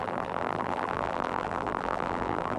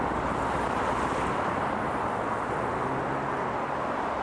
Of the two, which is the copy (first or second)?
first